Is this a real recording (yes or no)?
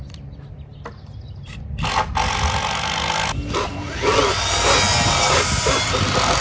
yes